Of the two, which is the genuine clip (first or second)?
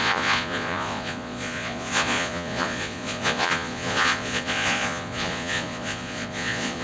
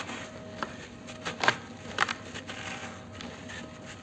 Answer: second